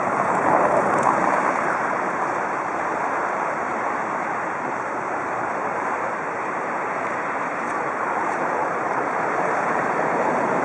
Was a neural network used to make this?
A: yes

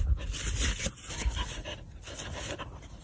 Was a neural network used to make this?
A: no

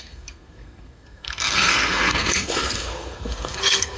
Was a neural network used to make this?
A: yes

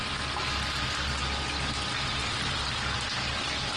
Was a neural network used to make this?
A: no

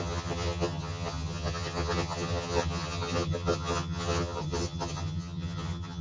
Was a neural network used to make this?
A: yes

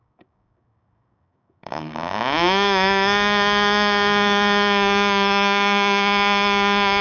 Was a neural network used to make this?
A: yes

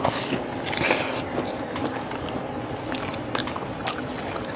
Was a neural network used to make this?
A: no